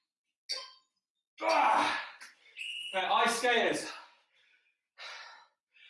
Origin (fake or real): real